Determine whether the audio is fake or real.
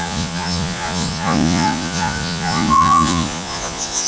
fake